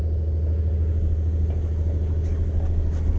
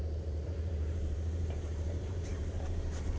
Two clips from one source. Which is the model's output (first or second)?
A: second